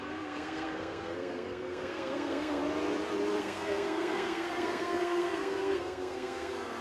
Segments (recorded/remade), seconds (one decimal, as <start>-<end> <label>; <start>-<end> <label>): 0.0-2.6 remade; 2.6-3.4 recorded; 3.4-6.8 remade